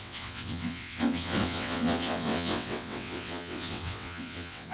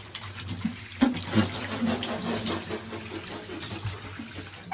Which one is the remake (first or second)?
first